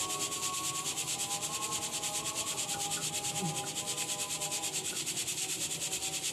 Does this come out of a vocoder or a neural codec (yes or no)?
no